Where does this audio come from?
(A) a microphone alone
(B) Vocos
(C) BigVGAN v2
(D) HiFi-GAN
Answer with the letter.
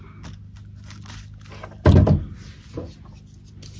A